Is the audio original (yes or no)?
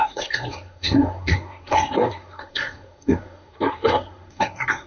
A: no